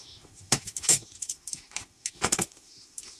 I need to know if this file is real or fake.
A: fake